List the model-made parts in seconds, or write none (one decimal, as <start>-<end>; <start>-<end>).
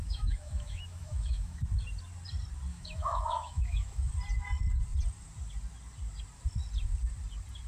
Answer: 0.0-1.6; 2.7-4.1